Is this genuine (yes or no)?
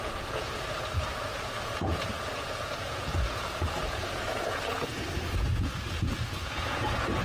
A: no